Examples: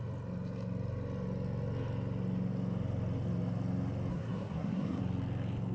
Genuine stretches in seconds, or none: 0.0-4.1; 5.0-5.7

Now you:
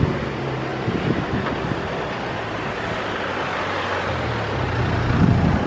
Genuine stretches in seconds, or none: 0.0-5.7

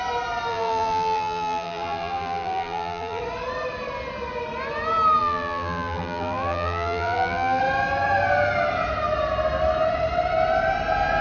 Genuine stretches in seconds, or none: 0.0-0.5; 3.2-5.2; 7.6-11.2

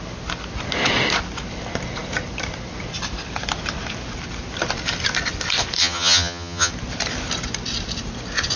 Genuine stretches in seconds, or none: 0.0-5.8; 6.7-8.6

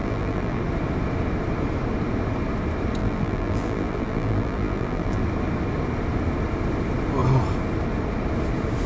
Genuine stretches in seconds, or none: 0.6-3.0; 5.2-8.9